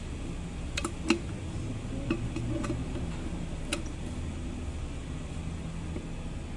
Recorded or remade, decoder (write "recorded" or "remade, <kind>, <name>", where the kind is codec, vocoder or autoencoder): recorded